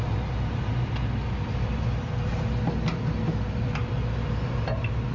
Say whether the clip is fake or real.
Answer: real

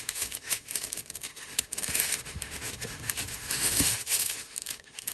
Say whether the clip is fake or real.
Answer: fake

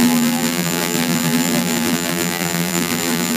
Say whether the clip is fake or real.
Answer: fake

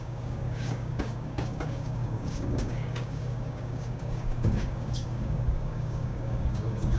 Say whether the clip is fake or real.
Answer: fake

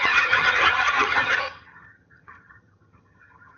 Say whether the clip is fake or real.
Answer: fake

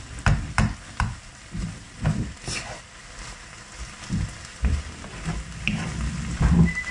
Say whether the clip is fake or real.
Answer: real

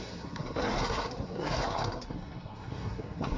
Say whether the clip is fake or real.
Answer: fake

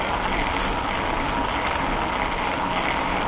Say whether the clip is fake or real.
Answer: real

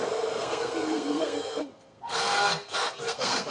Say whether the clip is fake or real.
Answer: fake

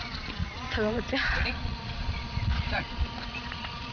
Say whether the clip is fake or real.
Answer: fake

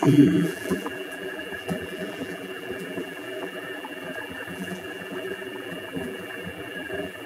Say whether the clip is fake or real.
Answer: fake